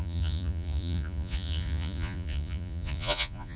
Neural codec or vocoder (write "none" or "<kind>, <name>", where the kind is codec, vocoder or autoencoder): vocoder, Vocos